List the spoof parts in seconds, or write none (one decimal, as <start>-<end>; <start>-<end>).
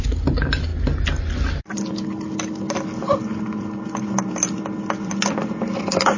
none